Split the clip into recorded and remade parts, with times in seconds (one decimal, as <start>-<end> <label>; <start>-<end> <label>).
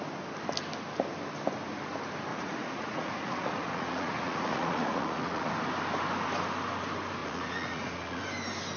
0.0-2.3 recorded; 2.3-5.5 remade; 5.5-7.2 recorded; 7.2-8.2 remade; 8.2-8.8 recorded